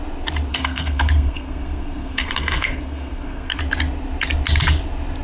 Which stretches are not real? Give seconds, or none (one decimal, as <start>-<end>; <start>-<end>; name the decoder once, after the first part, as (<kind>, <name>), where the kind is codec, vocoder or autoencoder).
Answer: 0.5-3.6 (codec, SNAC)